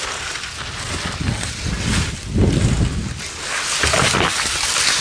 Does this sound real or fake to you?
real